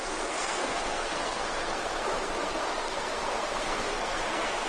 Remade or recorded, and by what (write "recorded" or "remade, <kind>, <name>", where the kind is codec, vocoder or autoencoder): remade, codec, SNAC